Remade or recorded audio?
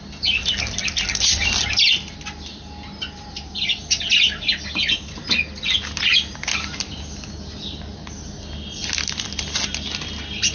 recorded